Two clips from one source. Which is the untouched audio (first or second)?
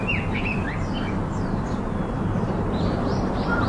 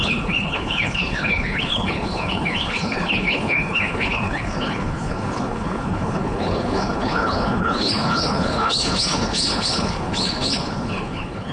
first